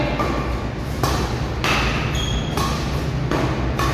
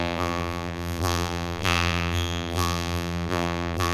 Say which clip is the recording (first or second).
first